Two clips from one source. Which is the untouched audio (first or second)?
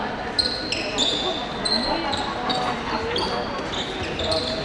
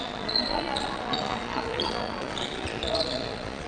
first